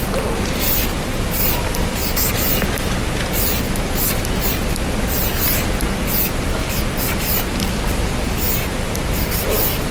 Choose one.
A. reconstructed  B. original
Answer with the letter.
B